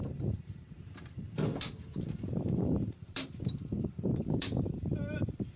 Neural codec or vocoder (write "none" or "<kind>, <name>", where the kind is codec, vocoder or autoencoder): vocoder, BigVGAN v2